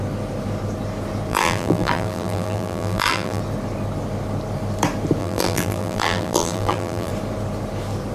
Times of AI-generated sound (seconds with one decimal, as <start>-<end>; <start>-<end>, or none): 1.3-3.4; 5.2-7.1